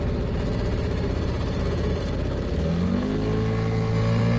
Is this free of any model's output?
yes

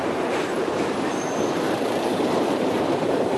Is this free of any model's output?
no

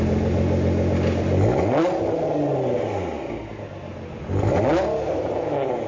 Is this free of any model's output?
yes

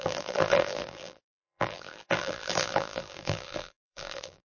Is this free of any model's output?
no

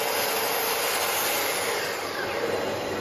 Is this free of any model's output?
yes